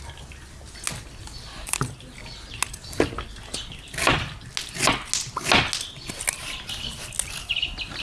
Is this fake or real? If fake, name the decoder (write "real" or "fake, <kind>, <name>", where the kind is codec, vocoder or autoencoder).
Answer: real